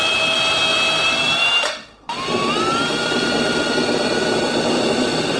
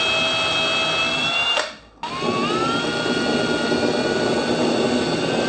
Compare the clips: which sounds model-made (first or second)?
first